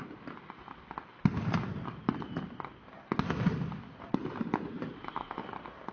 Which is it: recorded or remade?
recorded